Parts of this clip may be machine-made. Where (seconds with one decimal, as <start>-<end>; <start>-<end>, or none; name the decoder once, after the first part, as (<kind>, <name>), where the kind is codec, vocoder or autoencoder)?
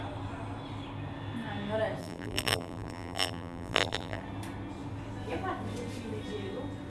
2.0-4.2 (vocoder, BigVGAN v2)